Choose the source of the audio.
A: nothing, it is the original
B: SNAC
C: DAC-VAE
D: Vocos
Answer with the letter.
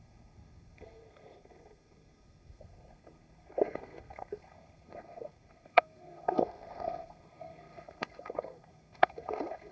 B